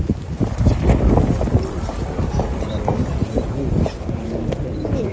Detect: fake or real real